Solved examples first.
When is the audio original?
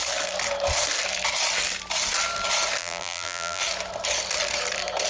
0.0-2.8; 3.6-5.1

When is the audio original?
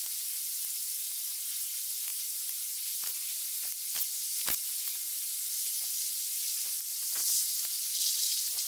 0.0-2.1; 2.8-7.2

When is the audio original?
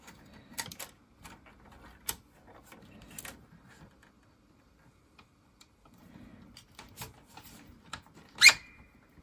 0.5-3.5; 6.3-9.2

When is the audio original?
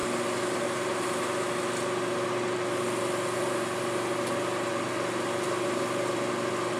0.0-6.8